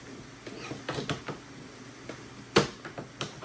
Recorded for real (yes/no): yes